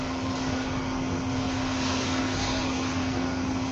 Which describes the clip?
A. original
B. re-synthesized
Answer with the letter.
B